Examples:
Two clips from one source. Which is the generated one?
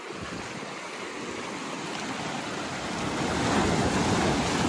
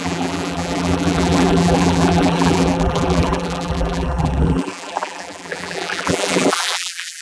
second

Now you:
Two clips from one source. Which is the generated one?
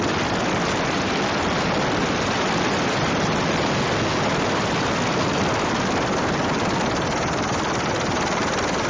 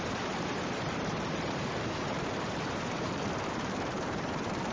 second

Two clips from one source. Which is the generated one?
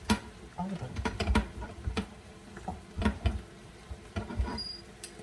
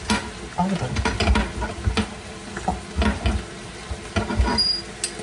first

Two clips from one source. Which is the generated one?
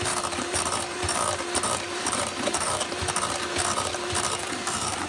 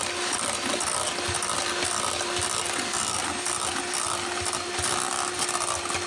first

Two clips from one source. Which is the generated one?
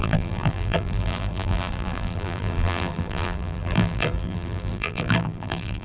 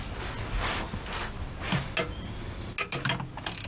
first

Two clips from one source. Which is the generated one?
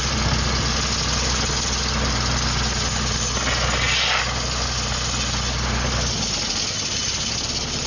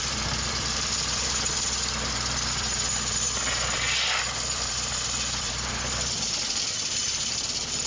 second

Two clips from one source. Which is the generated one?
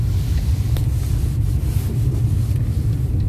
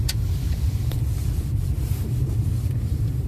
second